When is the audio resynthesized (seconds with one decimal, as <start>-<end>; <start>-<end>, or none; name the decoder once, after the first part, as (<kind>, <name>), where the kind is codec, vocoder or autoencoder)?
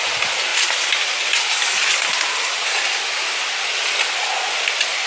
none